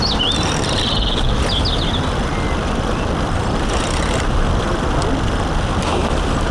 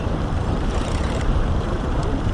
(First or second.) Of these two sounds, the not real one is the second